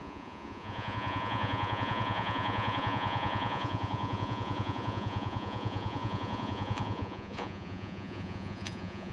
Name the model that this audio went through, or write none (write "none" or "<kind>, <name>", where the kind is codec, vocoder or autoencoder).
vocoder, Vocos